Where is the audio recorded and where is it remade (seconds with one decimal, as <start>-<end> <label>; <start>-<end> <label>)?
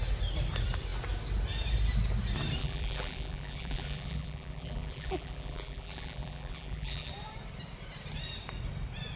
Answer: 0.0-2.6 recorded; 2.6-7.1 remade; 7.1-9.2 recorded